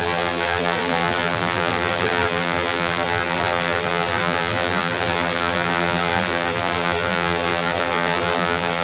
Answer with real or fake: fake